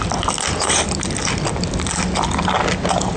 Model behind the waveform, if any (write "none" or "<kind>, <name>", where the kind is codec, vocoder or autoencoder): none